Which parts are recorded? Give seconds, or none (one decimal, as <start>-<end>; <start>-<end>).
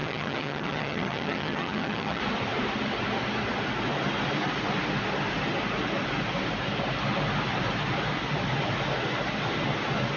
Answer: 2.2-10.2